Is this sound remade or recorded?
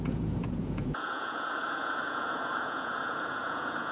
remade